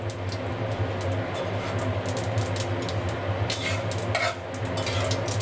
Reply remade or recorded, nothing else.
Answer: recorded